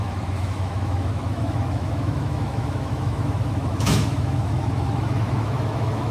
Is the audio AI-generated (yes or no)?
yes